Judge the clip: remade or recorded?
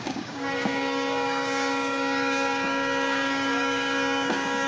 remade